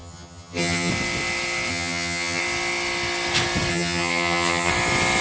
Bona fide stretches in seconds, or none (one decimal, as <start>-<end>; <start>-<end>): 0.9-1.7; 2.4-3.7; 4.7-5.2